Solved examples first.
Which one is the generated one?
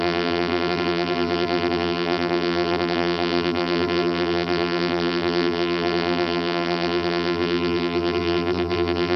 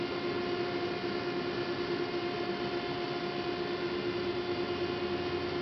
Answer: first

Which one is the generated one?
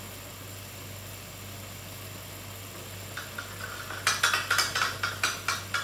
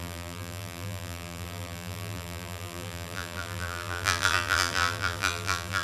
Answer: second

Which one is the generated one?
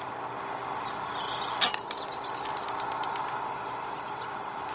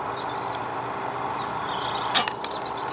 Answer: second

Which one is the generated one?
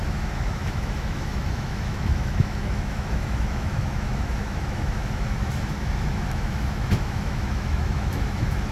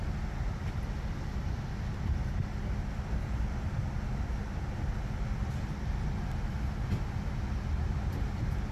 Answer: first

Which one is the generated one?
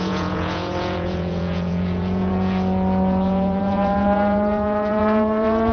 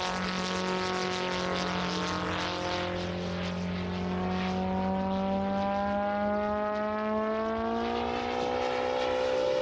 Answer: first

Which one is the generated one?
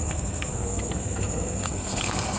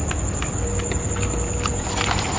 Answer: first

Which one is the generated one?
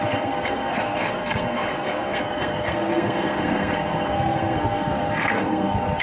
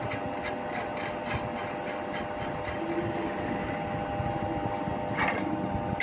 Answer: first